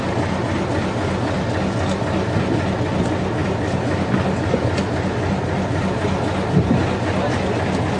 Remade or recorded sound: recorded